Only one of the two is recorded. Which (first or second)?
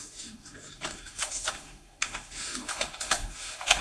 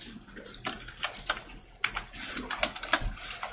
second